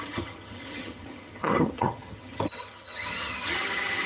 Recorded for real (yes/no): no